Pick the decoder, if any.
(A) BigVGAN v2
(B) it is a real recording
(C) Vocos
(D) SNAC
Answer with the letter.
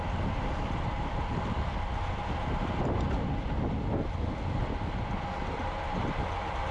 B